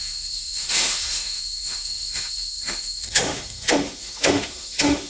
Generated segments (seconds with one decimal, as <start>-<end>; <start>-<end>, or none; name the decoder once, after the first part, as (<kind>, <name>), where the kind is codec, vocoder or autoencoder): 0.0-5.1 (autoencoder, DAC-VAE)